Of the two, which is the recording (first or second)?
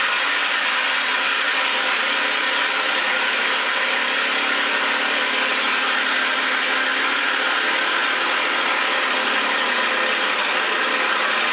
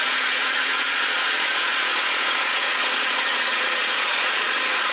first